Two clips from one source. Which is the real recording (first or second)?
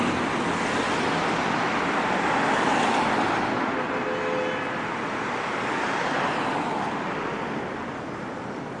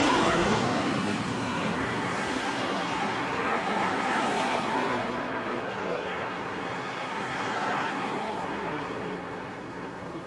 first